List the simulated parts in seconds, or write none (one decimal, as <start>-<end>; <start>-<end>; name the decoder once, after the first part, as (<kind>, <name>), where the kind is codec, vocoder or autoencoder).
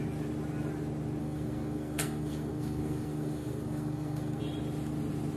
1.2-4.4 (codec, SNAC)